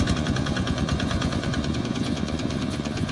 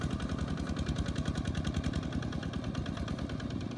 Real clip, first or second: second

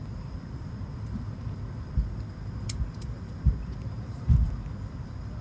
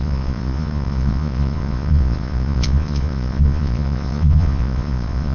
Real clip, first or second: first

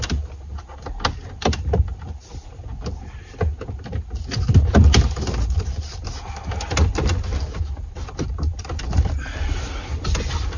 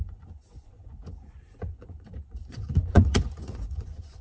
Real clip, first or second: first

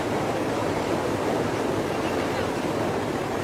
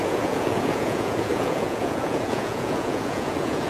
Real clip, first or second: first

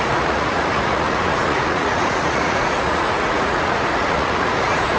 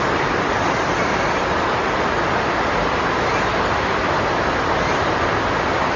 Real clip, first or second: second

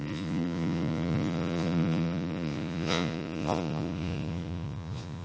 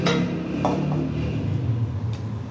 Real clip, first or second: second